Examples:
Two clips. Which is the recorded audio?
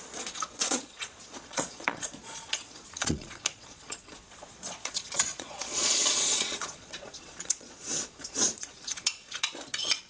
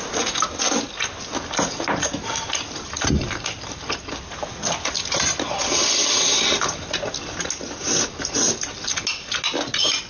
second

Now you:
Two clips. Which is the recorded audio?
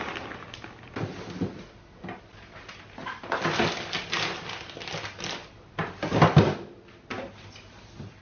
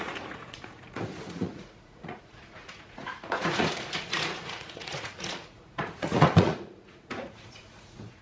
first